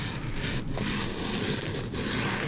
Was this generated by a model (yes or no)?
no